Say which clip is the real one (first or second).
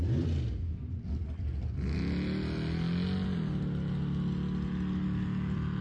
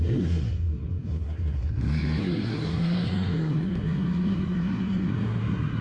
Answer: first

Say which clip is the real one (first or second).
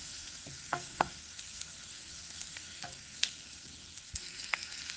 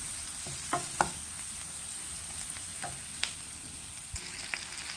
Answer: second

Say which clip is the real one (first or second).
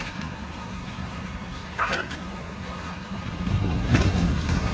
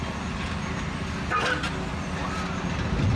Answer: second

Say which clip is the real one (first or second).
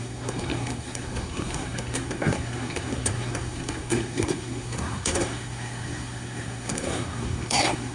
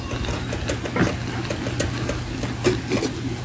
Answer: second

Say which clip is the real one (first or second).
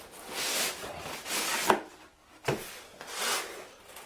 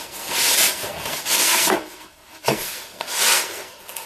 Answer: first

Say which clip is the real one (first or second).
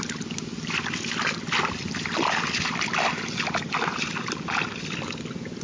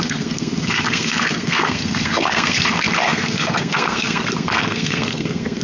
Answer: first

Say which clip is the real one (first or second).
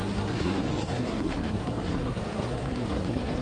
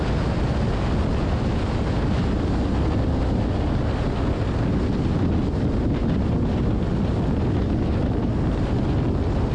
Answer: second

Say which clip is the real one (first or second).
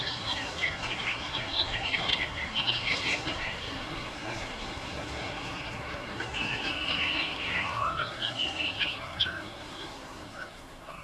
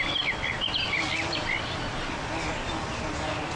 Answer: second